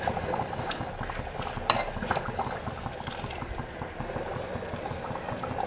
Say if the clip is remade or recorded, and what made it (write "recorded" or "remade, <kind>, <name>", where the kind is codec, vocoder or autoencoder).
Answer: recorded